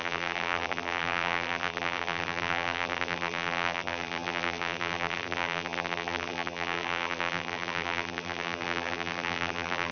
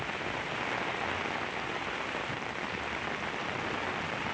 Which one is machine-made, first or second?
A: first